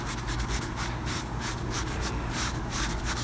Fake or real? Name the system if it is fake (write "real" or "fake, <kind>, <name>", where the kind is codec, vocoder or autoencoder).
fake, codec, DAC